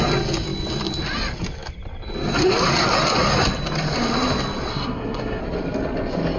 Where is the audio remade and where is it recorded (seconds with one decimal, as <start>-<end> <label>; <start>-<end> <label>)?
0.0-4.7 recorded; 4.7-5.4 remade; 5.4-6.4 recorded